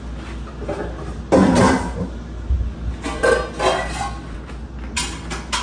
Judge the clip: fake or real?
real